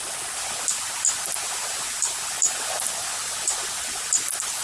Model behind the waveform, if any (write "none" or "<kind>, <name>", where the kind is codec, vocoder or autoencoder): none